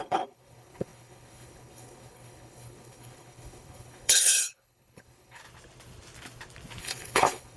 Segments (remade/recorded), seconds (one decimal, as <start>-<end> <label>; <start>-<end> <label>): 0.0-5.4 remade; 5.4-6.8 recorded; 6.8-7.6 remade